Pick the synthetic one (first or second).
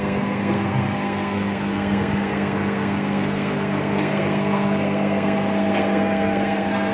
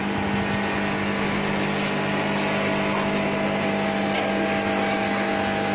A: first